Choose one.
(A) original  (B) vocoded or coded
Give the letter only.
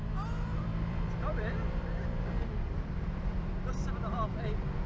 B